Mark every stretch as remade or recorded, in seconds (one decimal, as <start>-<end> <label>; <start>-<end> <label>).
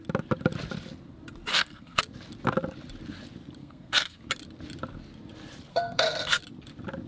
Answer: 0.0-1.5 recorded; 1.5-2.0 remade; 2.0-3.6 recorded; 3.6-4.2 remade; 4.2-5.7 recorded; 5.7-6.4 remade; 6.4-7.1 recorded